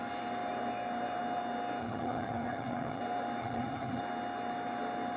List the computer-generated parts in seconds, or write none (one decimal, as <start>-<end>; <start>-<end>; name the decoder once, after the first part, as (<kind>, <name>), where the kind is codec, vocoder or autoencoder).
1.8-3.0 (vocoder, HiFi-GAN); 3.4-4.0